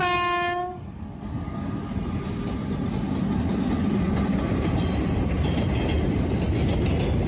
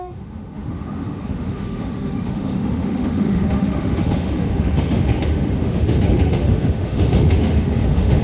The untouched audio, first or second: first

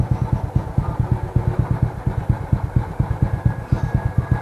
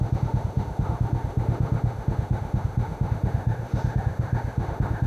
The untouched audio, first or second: first